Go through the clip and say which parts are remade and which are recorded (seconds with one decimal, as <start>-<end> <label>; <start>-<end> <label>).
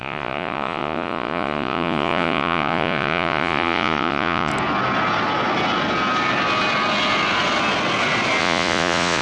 0.0-4.5 remade; 4.5-8.4 recorded; 8.4-9.2 remade